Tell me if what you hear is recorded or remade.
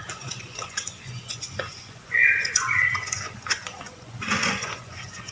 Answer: remade